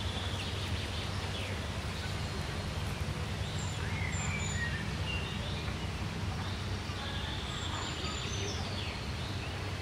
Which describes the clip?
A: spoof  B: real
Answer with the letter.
A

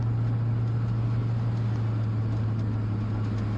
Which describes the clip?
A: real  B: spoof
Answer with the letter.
A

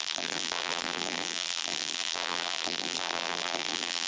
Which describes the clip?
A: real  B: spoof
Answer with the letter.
B